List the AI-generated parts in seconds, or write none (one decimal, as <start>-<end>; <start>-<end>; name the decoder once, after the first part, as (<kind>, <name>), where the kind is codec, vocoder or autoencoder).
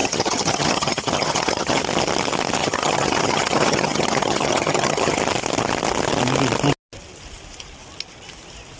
0.0-1.8 (vocoder, HiFi-GAN); 2.6-5.2